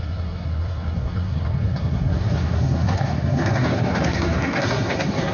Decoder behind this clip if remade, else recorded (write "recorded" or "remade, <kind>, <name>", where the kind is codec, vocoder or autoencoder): remade, codec, SNAC